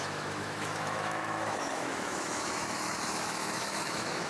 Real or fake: fake